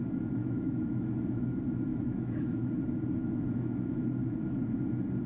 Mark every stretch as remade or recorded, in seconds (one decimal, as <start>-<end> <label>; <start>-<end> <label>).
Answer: 0.0-0.4 recorded; 0.4-1.5 remade; 1.5-1.9 recorded; 1.9-2.8 remade; 2.8-3.2 recorded; 3.2-3.9 remade; 3.9-5.3 recorded